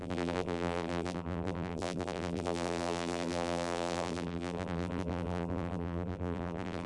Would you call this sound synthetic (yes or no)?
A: yes